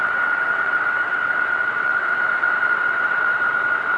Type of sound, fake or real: fake